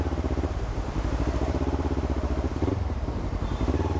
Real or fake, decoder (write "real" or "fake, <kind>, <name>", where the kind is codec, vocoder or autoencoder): fake, vocoder, BigVGAN v2